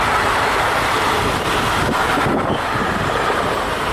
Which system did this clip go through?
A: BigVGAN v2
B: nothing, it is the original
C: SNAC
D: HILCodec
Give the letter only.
A